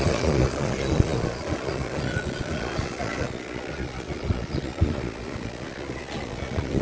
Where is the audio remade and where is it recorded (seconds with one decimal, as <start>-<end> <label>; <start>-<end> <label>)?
0.0-6.8 remade